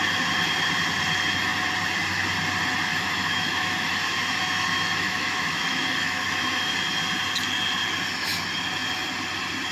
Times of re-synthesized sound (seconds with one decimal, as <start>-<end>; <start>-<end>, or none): 2.9-6.7